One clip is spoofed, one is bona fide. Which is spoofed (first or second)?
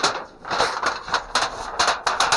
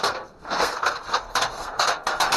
second